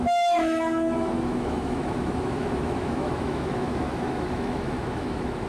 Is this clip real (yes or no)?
no